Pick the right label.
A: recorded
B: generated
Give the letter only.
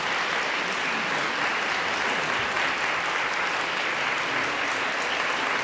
A